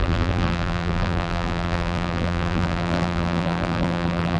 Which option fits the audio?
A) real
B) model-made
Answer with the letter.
B